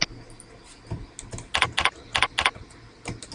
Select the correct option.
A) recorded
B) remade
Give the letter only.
A